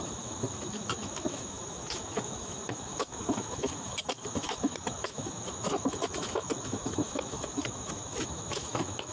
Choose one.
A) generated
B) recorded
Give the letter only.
A